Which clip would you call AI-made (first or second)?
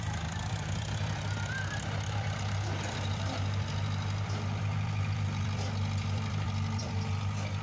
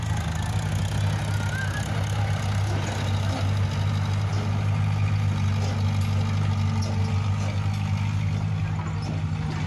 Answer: first